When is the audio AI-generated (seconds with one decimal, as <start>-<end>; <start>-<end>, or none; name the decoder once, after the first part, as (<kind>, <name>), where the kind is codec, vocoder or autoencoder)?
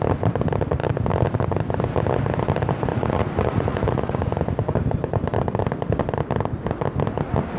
2.9-4.4 (vocoder, Vocos)